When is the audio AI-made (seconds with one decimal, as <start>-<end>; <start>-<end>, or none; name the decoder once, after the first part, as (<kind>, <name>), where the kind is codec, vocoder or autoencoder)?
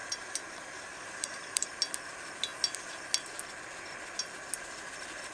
0.0-1.8 (vocoder, BigVGAN v2)